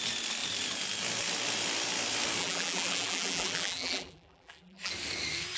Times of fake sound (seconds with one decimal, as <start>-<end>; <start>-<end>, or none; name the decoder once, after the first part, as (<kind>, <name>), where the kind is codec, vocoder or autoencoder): 2.4-4.9 (vocoder, BigVGAN v2)